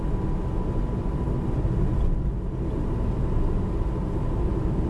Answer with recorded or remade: recorded